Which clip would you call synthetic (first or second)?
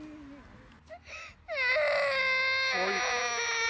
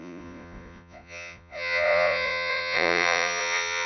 second